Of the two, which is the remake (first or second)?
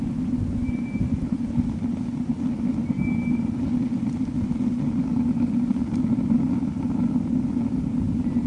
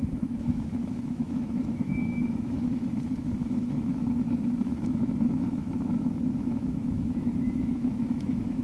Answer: second